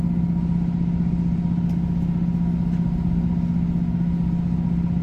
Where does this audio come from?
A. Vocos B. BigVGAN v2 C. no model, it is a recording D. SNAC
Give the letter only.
C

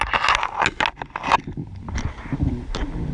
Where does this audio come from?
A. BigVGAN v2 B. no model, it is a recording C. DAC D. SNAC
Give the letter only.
B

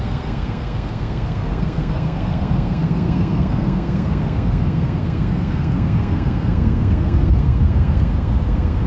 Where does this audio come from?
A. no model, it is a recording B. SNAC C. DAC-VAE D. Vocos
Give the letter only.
B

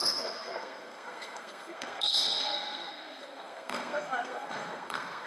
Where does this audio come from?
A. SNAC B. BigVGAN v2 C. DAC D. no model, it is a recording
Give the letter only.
A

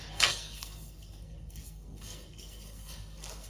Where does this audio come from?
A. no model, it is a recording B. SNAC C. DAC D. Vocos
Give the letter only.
B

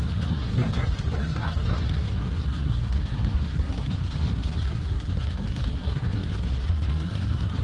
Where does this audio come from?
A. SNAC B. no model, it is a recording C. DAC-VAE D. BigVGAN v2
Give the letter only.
A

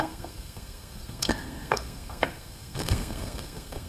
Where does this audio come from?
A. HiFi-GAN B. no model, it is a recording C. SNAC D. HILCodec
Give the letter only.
C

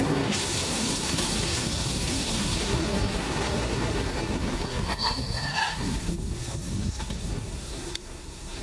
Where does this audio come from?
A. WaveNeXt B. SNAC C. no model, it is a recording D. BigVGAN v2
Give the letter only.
B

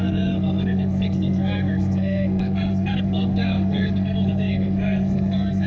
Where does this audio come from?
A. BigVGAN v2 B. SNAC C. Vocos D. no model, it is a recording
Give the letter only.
B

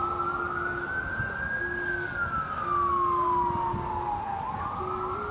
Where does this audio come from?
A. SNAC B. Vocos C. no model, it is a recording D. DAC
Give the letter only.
C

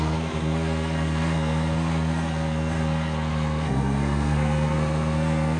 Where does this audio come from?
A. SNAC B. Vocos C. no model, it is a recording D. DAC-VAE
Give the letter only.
A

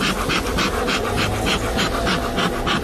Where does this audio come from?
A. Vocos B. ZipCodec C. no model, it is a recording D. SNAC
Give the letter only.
C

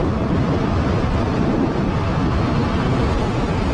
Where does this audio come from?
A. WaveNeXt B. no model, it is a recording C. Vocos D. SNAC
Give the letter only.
B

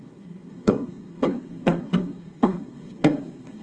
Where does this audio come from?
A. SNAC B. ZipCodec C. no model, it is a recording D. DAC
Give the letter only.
A